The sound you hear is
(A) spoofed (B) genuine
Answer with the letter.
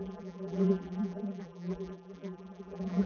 A